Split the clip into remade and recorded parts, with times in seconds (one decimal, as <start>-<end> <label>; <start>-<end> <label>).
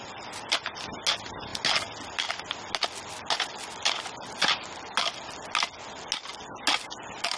0.0-7.4 recorded